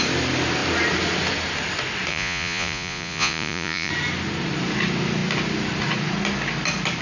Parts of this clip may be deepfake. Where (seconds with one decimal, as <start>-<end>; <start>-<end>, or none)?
2.1-3.9